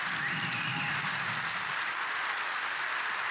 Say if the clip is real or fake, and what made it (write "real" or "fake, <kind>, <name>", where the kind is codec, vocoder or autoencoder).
real